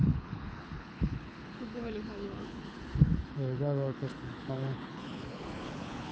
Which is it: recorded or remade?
remade